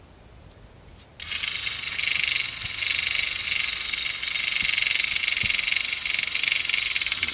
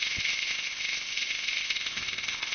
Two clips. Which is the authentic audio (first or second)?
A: first